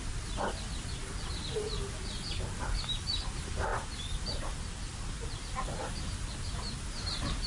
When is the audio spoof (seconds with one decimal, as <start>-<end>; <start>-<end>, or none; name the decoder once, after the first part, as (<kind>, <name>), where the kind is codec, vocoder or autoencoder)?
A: none